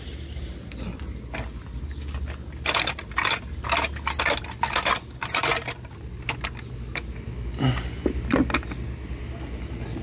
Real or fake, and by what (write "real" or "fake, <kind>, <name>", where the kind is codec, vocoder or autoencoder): real